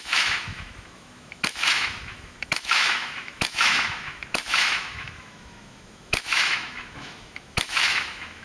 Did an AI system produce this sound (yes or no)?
yes